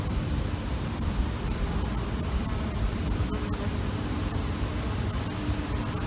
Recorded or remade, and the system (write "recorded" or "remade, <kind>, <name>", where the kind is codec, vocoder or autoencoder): recorded